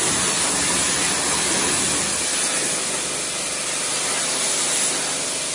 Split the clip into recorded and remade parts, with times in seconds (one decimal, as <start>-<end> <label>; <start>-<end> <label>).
0.0-5.5 recorded